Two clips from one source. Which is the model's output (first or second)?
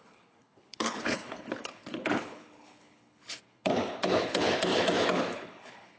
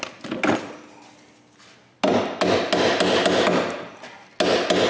first